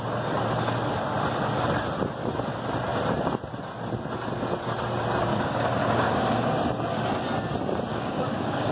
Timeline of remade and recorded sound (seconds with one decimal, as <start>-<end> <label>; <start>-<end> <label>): 0.0-5.3 recorded; 5.3-6.5 remade; 6.5-7.9 recorded; 7.9-8.7 remade